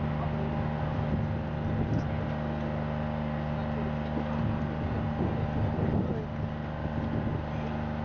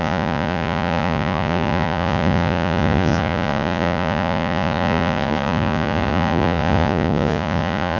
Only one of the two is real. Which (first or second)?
first